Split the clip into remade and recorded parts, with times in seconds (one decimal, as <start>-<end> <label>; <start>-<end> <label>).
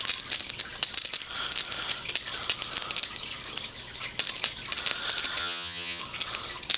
0.0-5.4 recorded; 5.4-6.0 remade; 6.0-6.8 recorded